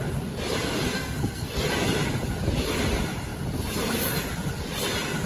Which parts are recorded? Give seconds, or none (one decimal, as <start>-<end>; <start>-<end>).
0.0-0.9; 1.6-5.3

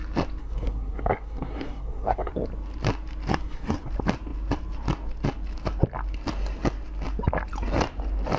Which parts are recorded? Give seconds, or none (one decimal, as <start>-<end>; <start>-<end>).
0.0-0.4; 2.3-3.3; 3.9-8.4

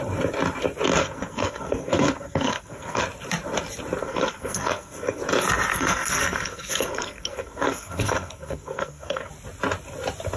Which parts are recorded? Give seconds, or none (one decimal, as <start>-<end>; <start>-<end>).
0.0-1.0; 3.0-4.0; 5.2-5.7; 9.3-10.4

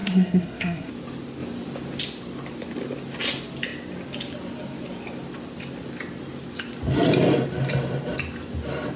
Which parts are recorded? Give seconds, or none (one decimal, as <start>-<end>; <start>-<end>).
0.9-9.0

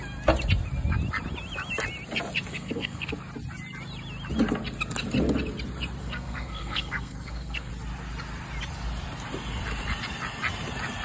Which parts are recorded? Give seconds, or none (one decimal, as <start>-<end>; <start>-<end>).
0.0-2.5; 3.1-6.0; 7.7-11.0

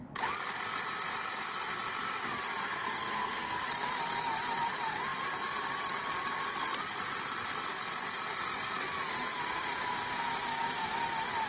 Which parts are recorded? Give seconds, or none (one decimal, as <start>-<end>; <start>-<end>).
0.0-2.6; 3.7-11.5

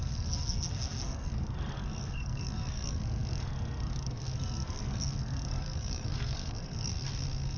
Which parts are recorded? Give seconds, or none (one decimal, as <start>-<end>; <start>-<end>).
none

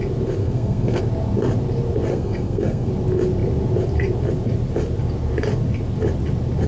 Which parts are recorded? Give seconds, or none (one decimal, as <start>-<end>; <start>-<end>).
0.0-0.4; 1.0-2.1; 2.9-6.7